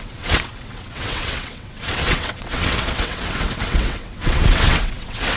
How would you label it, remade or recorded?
remade